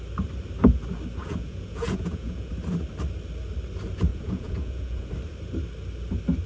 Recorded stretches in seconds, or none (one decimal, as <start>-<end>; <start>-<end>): 0.0-1.2; 2.5-4.1; 5.1-6.5